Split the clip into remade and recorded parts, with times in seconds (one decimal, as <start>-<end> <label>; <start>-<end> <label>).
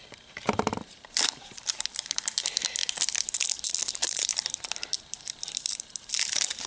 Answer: 0.0-2.8 remade; 2.8-3.9 recorded; 3.9-6.7 remade